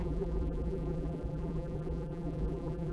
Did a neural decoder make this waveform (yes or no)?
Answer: yes